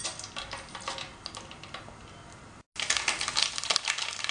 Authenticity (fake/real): real